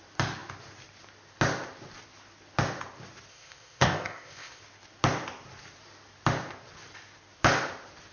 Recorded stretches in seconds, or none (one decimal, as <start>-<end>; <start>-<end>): 0.0-3.3; 4.6-8.1